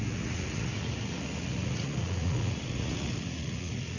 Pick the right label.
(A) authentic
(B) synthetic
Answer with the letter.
B